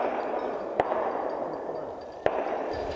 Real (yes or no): yes